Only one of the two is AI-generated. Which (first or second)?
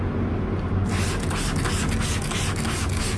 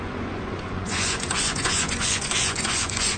second